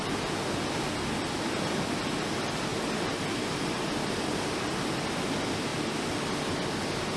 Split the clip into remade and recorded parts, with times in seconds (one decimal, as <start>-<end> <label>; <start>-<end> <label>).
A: 0.0-7.2 recorded